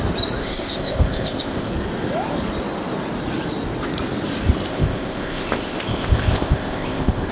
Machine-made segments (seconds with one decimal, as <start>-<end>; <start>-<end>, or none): 0.4-1.7; 4.7-7.3